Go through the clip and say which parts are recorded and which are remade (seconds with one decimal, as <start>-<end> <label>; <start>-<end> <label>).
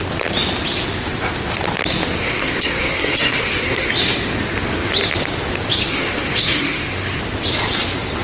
0.0-2.2 recorded; 2.2-3.9 remade; 3.9-5.9 recorded; 5.9-7.2 remade; 7.2-8.2 recorded